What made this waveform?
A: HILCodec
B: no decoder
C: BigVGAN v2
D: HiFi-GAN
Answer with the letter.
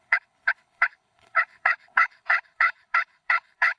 A